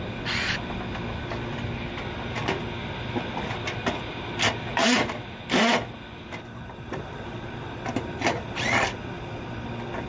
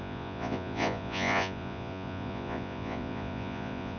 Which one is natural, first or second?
first